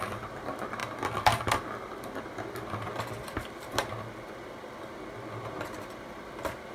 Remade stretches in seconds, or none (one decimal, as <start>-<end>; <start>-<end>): none